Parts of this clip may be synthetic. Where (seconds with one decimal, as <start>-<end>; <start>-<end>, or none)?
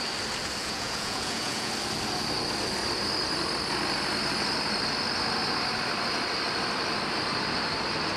0.6-1.7